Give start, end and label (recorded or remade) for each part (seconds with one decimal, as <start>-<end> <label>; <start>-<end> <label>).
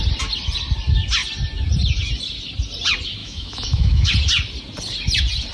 0.0-3.2 recorded; 3.2-4.1 remade; 4.1-5.5 recorded